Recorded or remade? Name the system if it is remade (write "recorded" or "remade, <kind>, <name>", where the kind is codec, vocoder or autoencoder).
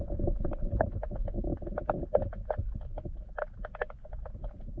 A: recorded